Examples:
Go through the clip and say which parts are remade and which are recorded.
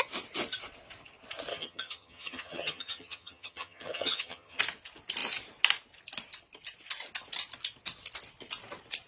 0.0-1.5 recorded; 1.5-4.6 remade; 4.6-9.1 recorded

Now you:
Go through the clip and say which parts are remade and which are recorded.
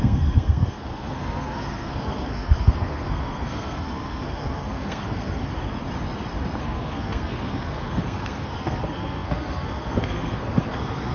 0.0-5.4 remade; 5.4-6.6 recorded; 6.6-11.1 remade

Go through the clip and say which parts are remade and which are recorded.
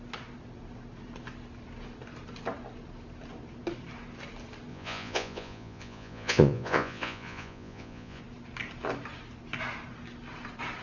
0.0-4.7 recorded; 4.7-8.2 remade; 8.2-10.8 recorded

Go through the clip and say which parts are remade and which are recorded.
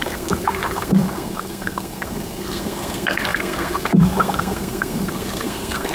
0.0-5.9 remade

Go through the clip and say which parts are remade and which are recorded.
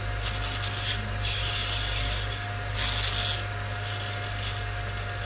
0.0-5.3 recorded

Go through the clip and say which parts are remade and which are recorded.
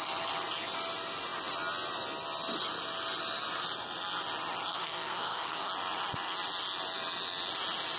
0.0-4.7 recorded; 4.7-5.7 remade; 5.7-8.0 recorded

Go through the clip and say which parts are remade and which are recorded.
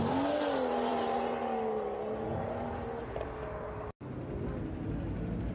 0.0-5.5 recorded